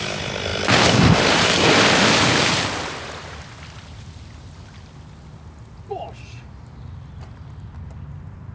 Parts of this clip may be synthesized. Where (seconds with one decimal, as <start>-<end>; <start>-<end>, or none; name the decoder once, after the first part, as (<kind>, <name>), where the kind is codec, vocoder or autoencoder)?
none